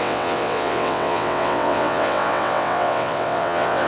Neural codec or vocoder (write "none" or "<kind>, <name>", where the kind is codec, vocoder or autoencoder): vocoder, WaveNeXt